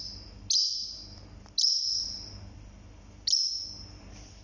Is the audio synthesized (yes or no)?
no